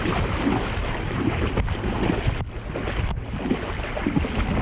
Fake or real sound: real